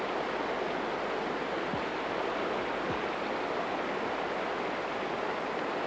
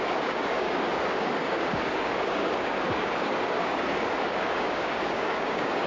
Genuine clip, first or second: first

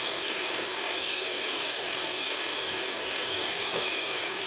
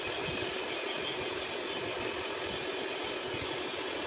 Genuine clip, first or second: second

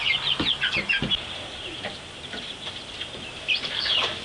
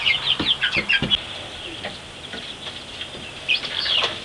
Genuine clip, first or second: second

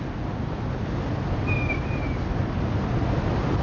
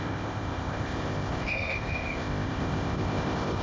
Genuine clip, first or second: first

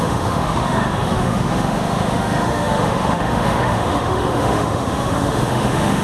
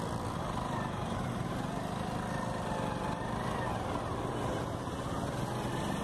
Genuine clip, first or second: second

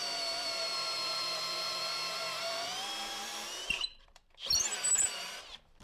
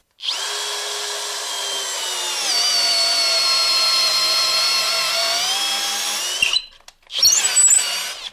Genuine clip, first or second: second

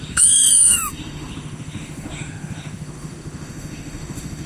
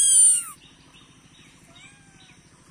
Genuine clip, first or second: second